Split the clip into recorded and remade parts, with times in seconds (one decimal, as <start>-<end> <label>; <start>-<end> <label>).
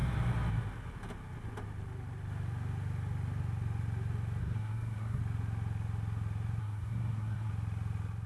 0.0-4.4 recorded; 4.4-5.2 remade; 5.2-6.6 recorded; 6.6-7.5 remade; 7.5-8.3 recorded